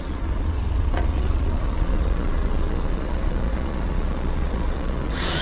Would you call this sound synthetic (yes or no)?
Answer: yes